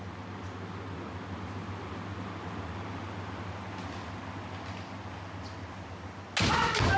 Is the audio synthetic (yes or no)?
no